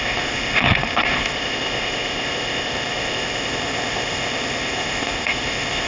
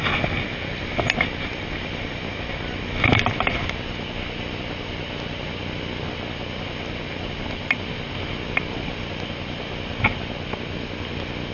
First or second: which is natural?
second